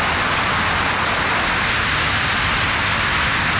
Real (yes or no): yes